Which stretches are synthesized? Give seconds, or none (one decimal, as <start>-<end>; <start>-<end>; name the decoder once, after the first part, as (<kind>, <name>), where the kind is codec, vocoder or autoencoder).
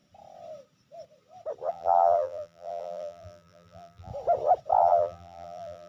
1.7-4.1 (vocoder, BigVGAN v2); 4.8-5.9